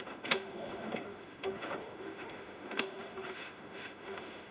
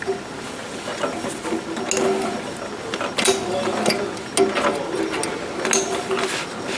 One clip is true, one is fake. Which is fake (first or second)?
first